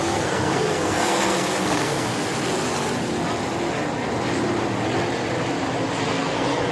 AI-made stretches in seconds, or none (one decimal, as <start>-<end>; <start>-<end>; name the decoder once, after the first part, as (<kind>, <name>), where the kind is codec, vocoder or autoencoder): 0.0-2.1 (codec, SNAC); 6.1-6.7

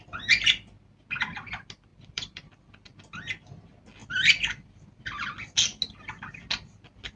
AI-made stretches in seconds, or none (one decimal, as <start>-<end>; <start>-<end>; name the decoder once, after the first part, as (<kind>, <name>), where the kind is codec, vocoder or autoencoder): 1.9-2.7 (vocoder, BigVGAN v2)

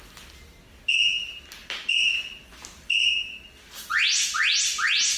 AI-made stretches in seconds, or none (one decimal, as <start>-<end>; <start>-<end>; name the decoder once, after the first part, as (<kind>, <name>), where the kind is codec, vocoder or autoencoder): none

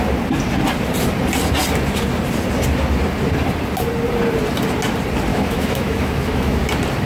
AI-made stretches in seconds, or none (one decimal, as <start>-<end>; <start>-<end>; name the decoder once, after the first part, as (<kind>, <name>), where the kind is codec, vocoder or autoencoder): 5.3-6.6 (autoencoder, DAC-VAE)

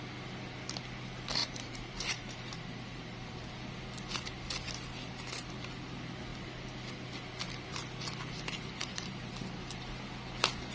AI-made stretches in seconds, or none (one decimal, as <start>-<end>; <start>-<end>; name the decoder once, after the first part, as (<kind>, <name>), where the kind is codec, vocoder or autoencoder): 1.4-3.5 (vocoder, BigVGAN v2); 8.8-9.3

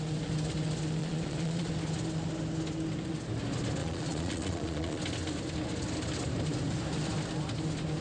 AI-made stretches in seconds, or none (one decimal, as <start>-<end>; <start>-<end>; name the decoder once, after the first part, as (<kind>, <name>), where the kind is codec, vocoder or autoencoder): 1.0-1.7 (vocoder, Vocos); 3.8-5.0